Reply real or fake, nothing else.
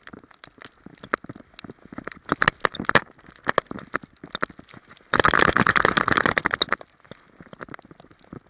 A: real